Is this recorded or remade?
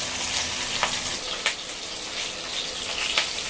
recorded